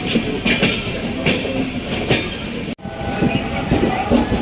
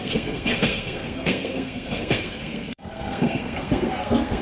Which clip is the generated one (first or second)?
second